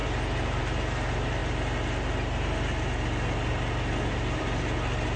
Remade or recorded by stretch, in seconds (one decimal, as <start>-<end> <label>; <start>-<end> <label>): 0.0-5.2 recorded

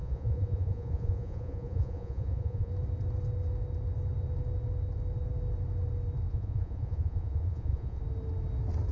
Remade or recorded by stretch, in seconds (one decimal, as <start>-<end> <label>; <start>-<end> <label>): 0.0-2.7 remade; 2.7-6.3 recorded; 6.3-8.0 remade; 8.0-8.9 recorded

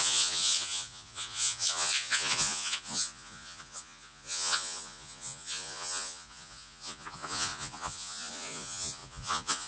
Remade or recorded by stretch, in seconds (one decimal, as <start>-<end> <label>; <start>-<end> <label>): 0.0-9.7 remade

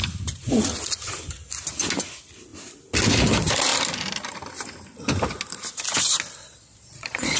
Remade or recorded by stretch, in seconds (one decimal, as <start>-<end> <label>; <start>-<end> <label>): 0.0-6.4 recorded; 6.4-7.4 remade

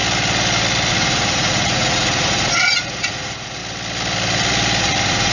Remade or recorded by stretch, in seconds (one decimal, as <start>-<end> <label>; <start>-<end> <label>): 0.0-0.9 recorded; 0.9-3.6 remade; 3.6-4.8 recorded; 4.8-5.3 remade

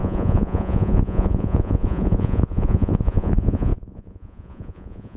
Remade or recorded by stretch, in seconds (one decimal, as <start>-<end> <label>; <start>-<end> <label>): 0.0-5.2 remade